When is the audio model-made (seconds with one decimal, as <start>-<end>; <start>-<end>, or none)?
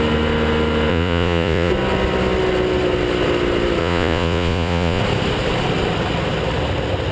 0.9-1.7; 3.8-5.0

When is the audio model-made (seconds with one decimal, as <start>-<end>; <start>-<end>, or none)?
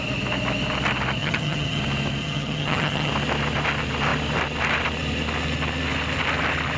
1.2-1.8; 2.2-3.1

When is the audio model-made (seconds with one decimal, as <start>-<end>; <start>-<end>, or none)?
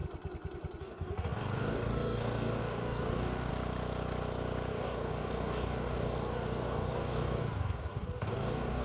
0.8-3.5; 4.7-8.8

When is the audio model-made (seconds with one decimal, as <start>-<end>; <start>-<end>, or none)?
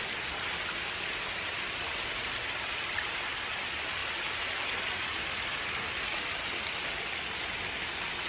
none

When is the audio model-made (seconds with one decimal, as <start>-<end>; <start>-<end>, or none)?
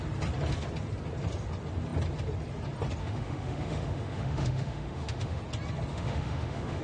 3.0-5.4; 5.9-6.8